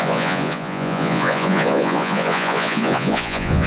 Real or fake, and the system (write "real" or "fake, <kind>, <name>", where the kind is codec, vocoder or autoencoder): fake, vocoder, Vocos